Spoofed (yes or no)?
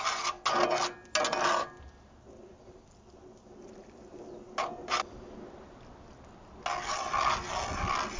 no